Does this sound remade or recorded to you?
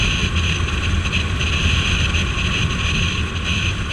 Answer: recorded